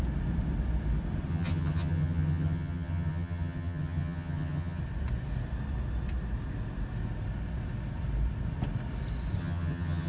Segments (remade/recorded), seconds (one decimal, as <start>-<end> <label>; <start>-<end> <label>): 0.0-1.3 recorded; 1.3-4.8 remade; 4.8-9.4 recorded; 9.4-10.1 remade